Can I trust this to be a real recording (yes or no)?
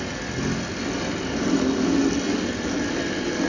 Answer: yes